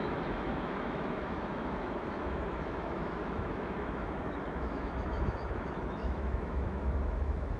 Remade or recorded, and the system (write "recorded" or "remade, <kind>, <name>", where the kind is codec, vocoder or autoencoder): remade, autoencoder, DAC-VAE